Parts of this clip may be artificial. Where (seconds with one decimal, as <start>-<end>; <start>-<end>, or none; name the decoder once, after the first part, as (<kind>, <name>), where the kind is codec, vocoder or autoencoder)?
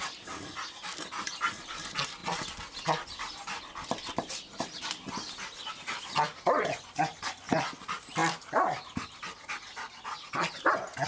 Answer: none